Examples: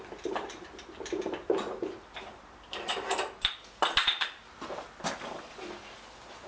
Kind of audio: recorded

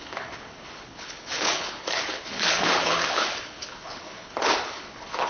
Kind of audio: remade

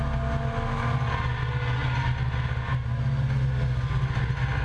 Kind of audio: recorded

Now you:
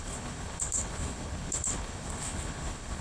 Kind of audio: remade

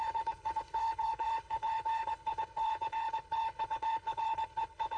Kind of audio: remade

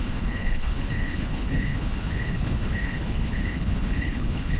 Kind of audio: remade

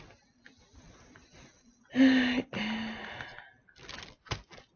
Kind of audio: recorded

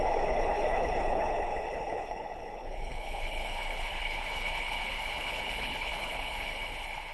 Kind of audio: remade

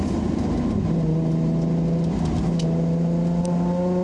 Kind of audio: recorded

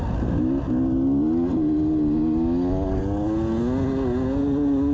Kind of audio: recorded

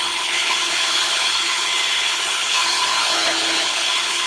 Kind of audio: remade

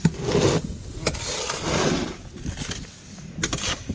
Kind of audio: recorded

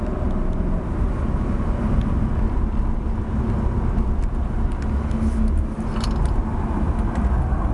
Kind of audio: recorded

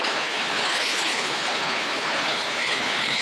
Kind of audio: remade